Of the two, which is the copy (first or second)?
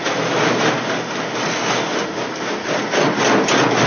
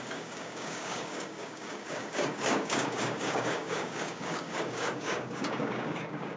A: second